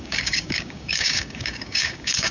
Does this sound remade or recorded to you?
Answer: remade